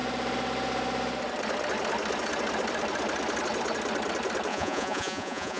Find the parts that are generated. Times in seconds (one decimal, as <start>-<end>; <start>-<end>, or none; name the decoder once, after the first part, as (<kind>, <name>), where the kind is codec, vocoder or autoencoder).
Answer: 4.5-5.6 (vocoder, Vocos)